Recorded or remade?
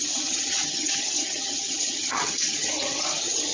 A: remade